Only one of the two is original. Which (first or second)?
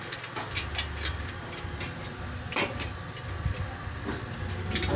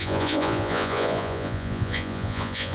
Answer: first